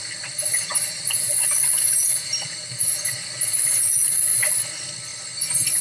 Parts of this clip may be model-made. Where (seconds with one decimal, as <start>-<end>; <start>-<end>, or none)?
0.7-4.2